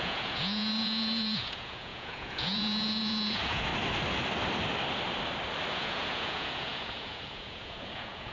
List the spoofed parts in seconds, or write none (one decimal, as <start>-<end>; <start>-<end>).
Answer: 0.0-3.7; 5.7-8.3